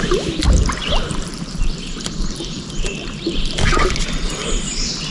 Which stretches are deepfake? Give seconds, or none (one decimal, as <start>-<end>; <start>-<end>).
0.8-3.9